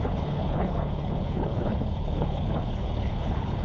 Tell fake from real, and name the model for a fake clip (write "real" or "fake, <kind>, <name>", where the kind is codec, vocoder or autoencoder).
fake, codec, HILCodec